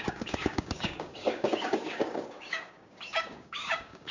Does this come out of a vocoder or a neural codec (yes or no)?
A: yes